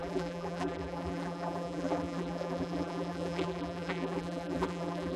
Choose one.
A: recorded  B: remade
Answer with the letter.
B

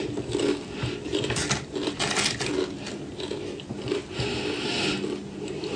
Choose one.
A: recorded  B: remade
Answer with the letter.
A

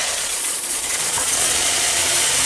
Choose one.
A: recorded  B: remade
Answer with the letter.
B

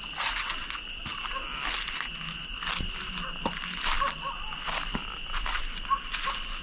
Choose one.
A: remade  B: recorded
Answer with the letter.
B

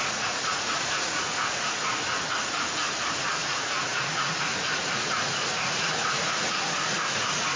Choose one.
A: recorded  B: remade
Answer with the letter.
B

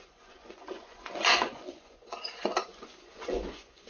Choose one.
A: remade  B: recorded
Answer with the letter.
A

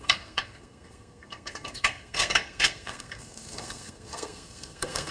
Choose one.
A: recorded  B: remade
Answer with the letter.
B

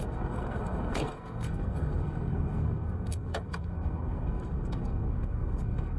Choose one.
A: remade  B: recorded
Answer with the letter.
A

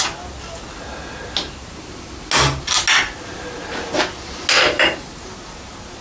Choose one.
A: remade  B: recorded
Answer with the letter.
B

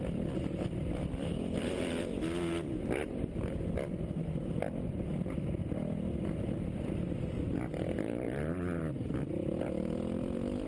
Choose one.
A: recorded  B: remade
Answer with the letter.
A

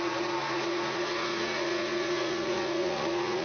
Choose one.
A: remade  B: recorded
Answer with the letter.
A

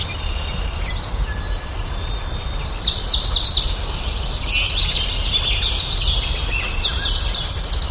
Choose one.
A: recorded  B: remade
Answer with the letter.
A